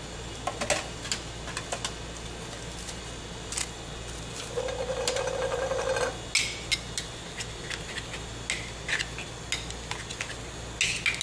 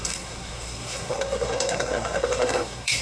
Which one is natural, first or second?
first